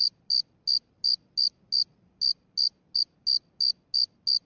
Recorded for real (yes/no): yes